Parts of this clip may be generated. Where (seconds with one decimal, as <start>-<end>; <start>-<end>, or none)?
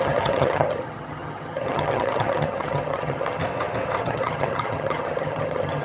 0.0-3.4; 4.0-5.8